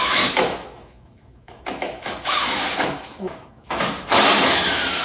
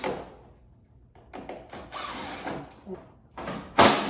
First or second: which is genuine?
second